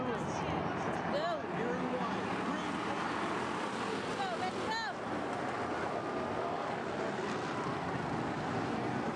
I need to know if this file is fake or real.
real